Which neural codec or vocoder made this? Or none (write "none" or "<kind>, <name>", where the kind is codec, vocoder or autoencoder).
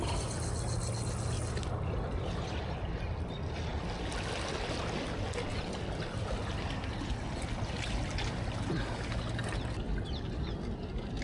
none